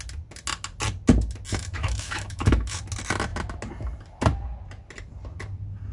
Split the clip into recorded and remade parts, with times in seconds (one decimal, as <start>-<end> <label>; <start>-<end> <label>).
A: 0.0-1.5 recorded; 1.5-2.8 remade; 2.8-5.9 recorded